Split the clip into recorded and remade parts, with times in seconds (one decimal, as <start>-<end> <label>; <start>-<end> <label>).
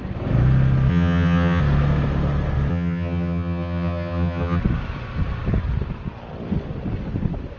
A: 0.0-0.9 recorded; 0.9-1.6 remade; 1.6-2.7 recorded; 2.7-4.6 remade; 4.6-7.6 recorded